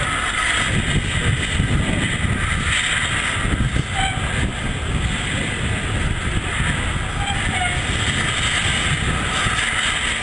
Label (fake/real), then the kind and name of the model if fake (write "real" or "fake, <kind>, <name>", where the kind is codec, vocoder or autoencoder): real